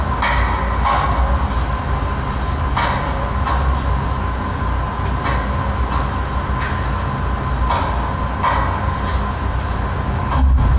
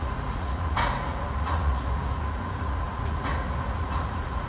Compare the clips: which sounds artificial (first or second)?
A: second